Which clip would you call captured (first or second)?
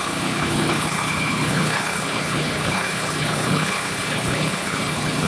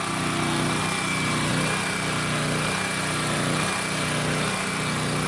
second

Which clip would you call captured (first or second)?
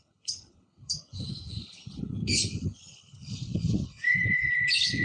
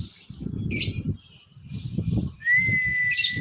second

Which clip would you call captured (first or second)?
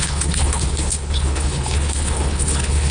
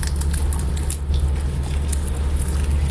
second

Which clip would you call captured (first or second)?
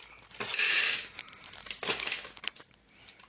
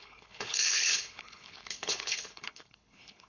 first